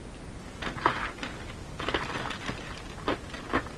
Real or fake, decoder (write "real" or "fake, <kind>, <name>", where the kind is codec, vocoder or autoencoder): real